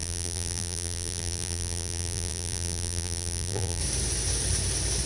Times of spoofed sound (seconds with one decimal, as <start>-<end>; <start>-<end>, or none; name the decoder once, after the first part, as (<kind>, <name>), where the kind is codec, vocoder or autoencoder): 0.0-3.8 (vocoder, BigVGAN v2)